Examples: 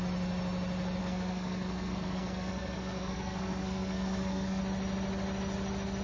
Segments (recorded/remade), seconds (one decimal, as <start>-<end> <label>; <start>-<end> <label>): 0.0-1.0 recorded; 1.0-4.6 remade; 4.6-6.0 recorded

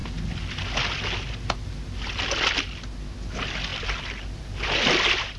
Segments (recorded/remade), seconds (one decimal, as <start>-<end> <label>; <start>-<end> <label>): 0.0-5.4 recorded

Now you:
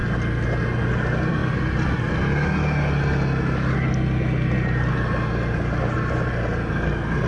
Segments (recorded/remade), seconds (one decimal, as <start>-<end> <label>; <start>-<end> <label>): 0.0-7.3 recorded

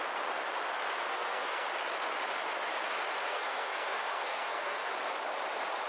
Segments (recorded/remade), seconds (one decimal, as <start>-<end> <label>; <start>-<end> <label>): 0.0-1.1 recorded; 1.1-1.7 remade; 1.7-3.3 recorded; 3.3-4.9 remade; 4.9-5.9 recorded